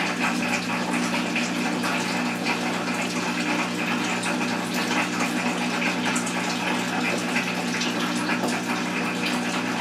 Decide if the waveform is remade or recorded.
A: recorded